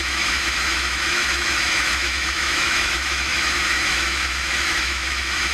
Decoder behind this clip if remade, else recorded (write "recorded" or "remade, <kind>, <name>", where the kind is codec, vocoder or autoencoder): remade, autoencoder, DAC-VAE